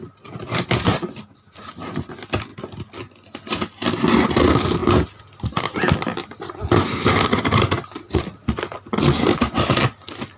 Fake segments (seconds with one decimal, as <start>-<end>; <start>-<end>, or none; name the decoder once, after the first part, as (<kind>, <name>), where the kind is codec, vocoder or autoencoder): none